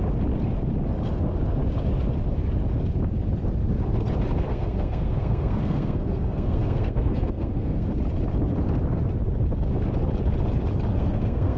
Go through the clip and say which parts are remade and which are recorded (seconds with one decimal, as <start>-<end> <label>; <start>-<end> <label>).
0.0-4.5 recorded; 4.5-7.9 remade; 7.9-10.9 recorded; 10.9-11.6 remade